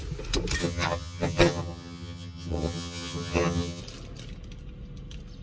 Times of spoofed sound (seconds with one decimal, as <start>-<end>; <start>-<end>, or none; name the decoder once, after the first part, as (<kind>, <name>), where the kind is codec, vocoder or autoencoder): 0.6-3.8 (vocoder, HiFi-GAN)